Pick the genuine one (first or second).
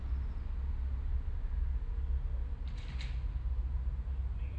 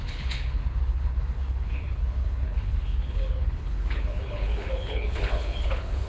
first